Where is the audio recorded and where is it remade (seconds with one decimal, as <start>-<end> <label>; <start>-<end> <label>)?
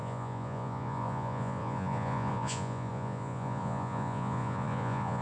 0.0-5.2 remade